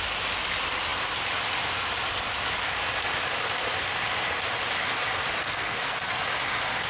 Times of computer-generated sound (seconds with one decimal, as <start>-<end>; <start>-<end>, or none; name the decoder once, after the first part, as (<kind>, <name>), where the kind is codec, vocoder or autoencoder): 5.4-6.1 (codec, SNAC)